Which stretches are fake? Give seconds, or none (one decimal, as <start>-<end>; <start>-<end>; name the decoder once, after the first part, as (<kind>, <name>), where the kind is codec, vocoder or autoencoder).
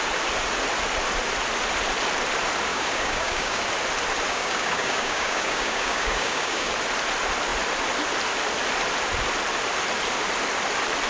2.7-3.6 (codec, DAC); 4.3-6.7